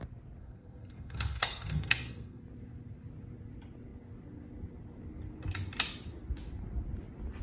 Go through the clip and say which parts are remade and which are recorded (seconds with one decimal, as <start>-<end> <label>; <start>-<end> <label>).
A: 0.0-0.4 recorded; 0.4-2.4 remade; 2.4-7.4 recorded